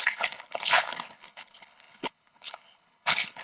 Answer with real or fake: fake